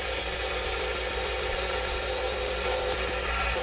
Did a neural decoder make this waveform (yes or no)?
no